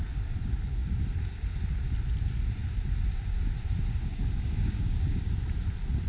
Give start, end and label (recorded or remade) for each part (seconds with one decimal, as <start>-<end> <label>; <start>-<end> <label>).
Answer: 0.0-4.1 recorded; 4.1-5.2 remade; 5.2-6.1 recorded